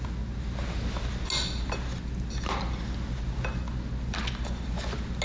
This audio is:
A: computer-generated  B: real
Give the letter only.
B